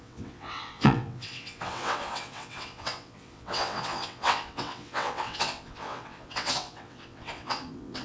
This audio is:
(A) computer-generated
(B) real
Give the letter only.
A